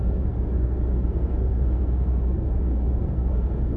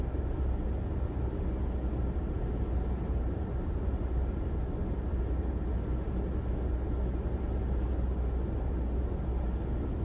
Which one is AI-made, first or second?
first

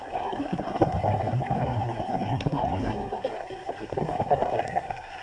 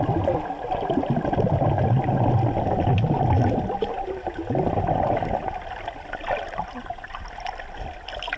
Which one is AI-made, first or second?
first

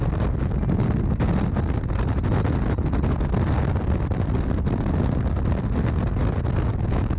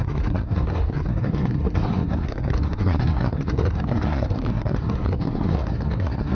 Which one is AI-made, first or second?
second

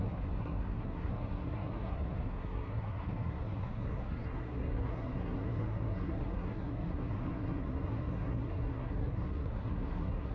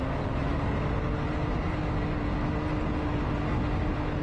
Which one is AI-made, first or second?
first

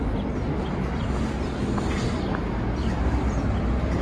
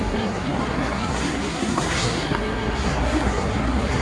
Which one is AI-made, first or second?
second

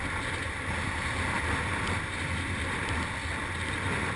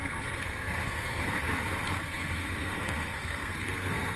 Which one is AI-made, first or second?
second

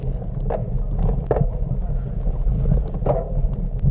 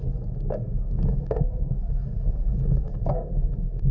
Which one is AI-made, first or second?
second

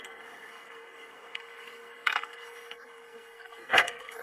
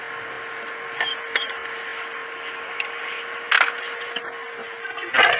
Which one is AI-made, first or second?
first